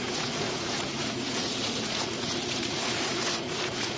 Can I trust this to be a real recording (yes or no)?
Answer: no